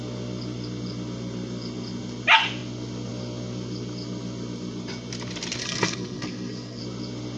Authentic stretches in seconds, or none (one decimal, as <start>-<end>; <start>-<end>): 0.0-5.6; 6.8-7.4